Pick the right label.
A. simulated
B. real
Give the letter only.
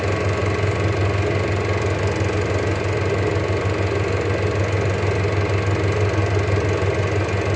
B